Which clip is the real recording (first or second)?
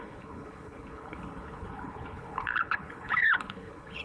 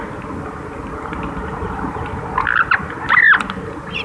second